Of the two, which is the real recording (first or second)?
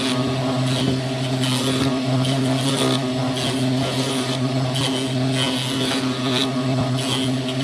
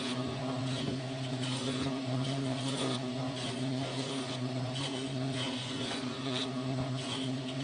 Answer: first